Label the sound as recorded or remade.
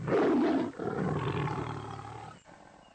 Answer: recorded